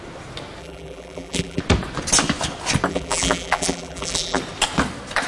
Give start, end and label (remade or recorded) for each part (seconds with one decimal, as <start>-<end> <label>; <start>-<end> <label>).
0.0-0.6 recorded; 0.6-1.6 remade; 1.6-2.9 recorded; 2.9-4.4 remade; 4.4-5.3 recorded